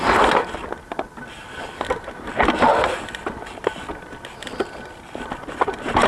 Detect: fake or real real